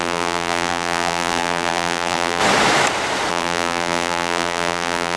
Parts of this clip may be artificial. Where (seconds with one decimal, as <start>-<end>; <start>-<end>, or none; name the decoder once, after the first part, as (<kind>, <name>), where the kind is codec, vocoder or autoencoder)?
0.0-2.4 (vocoder, BigVGAN v2); 3.3-5.2